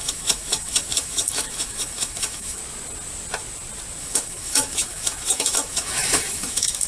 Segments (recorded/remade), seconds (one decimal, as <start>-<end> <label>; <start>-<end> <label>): 0.0-2.6 remade; 2.6-4.0 recorded; 4.0-6.9 remade